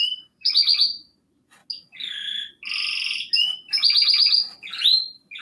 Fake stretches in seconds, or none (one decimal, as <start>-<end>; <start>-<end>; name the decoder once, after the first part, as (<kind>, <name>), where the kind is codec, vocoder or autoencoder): 0.0-1.6 (vocoder, BigVGAN v2); 4.8-5.4